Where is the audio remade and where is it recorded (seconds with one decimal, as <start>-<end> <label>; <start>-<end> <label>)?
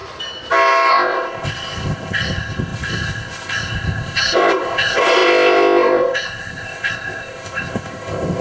0.0-0.9 recorded; 0.9-8.4 remade